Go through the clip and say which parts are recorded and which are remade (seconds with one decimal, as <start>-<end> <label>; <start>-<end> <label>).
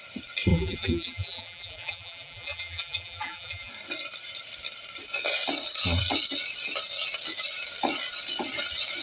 0.0-0.5 recorded; 0.5-3.7 remade; 3.7-9.0 recorded